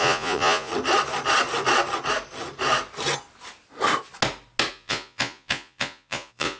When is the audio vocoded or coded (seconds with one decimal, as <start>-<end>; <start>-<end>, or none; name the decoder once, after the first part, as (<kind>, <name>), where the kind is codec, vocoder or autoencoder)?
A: 0.0-0.7 (vocoder, Vocos); 4.7-6.6